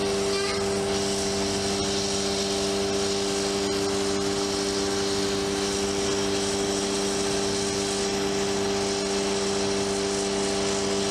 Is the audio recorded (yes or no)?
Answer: yes